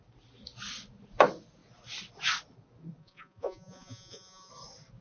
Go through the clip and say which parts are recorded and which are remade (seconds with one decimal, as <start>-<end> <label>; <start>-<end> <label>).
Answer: 0.0-3.0 recorded; 3.0-4.5 remade; 4.5-5.0 recorded